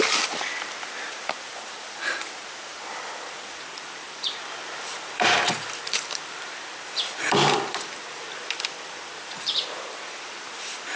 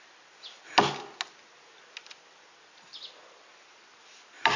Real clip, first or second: second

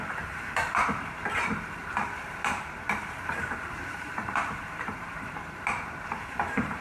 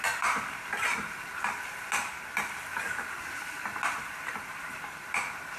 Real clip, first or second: second